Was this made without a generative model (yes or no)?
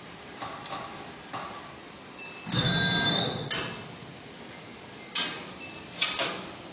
yes